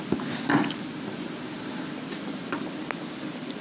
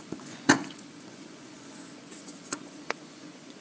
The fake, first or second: second